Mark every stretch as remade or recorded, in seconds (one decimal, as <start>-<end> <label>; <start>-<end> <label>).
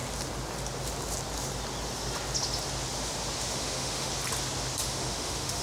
0.0-3.4 recorded; 3.4-4.1 remade; 4.1-4.8 recorded; 4.8-5.6 remade